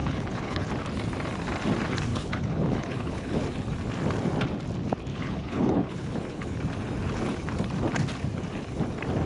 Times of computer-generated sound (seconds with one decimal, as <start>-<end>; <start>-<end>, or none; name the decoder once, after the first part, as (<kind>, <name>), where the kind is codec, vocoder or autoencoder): 0.0-0.7 (codec, HILCodec); 2.1-3.4; 5.1-6.6